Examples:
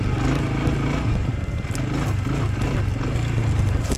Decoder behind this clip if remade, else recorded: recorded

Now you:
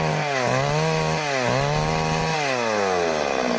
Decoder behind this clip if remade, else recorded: recorded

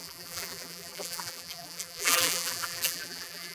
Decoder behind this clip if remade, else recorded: remade, vocoder, BigVGAN v2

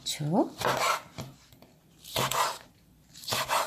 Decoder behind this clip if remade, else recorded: remade, vocoder, BigVGAN v2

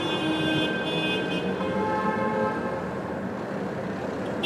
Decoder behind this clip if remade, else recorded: recorded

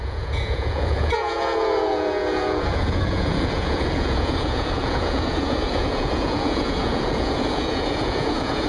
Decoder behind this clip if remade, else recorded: remade, vocoder, Vocos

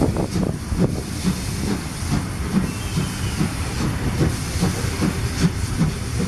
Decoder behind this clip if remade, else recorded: recorded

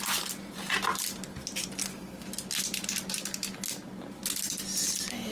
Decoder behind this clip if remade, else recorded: recorded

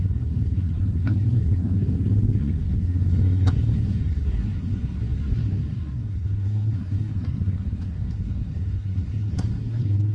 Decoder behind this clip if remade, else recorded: remade, codec, SNAC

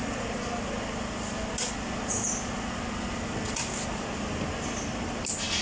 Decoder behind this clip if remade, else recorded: recorded